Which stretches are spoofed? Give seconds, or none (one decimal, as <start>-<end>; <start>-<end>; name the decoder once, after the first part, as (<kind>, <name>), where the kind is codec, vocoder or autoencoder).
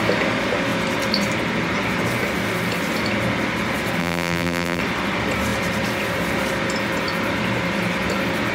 4.0-4.8 (vocoder, BigVGAN v2)